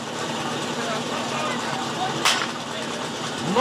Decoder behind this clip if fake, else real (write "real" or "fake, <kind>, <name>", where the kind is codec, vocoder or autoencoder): fake, vocoder, BigVGAN v2